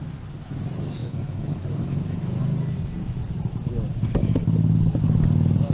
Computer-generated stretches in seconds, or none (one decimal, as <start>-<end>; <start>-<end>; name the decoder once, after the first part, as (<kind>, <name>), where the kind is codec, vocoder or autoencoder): 1.0-2.4 (autoencoder, DAC-VAE)